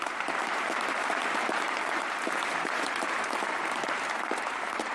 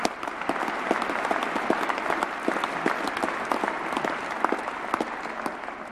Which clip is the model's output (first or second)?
first